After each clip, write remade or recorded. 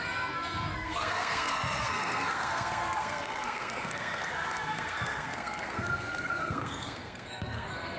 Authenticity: remade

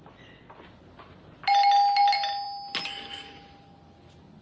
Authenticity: recorded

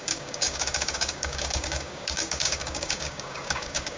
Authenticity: remade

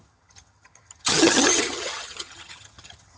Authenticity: remade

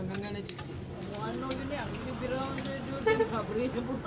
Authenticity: recorded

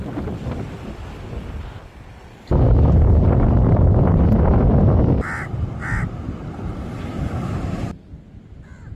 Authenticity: recorded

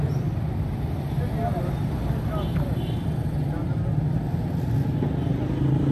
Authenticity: recorded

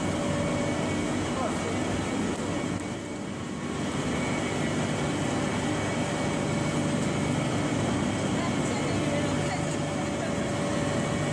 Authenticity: recorded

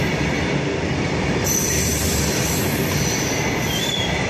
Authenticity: recorded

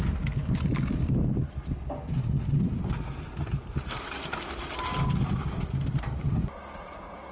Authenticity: recorded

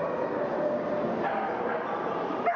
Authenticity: recorded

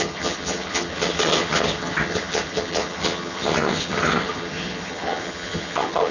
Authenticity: remade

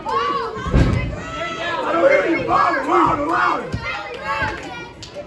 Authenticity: recorded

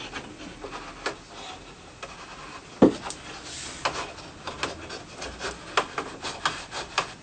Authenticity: recorded